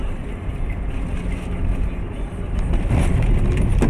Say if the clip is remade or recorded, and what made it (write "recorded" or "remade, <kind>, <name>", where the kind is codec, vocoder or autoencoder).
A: recorded